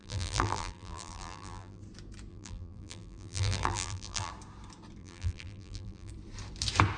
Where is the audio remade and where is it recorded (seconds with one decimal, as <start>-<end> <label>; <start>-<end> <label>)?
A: 0.0-1.8 remade; 1.8-2.3 recorded; 2.3-4.3 remade; 4.3-5.0 recorded; 5.0-6.1 remade; 6.1-7.0 recorded

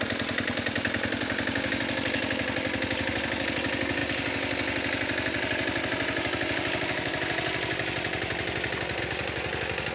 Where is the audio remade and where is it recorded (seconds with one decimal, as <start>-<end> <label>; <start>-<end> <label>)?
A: 0.0-9.9 recorded

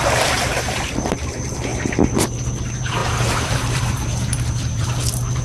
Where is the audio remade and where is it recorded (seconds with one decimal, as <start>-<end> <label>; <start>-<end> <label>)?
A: 0.0-1.7 remade; 1.7-2.6 recorded; 2.6-5.4 remade

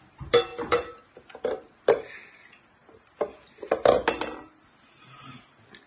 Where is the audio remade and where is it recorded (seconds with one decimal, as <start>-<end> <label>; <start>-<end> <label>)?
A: 0.0-0.5 recorded; 0.5-2.1 remade; 2.1-5.9 recorded

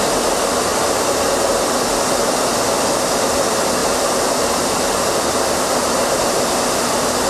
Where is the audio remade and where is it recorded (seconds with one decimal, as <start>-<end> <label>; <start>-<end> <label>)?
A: 0.0-5.8 recorded; 5.8-6.5 remade; 6.5-7.3 recorded